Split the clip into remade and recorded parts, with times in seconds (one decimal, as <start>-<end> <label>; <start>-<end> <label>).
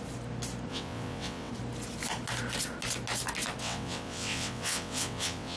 0.0-0.7 recorded; 0.7-1.5 remade; 1.5-3.6 recorded; 3.6-5.6 remade